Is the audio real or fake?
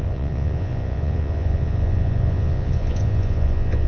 fake